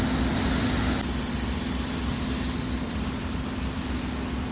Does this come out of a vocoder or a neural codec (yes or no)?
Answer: no